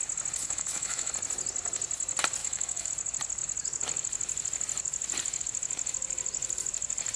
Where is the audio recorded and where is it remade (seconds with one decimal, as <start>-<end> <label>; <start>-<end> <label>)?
0.0-0.4 recorded; 0.4-1.1 remade; 1.1-2.4 recorded; 2.4-2.9 remade; 2.9-7.2 recorded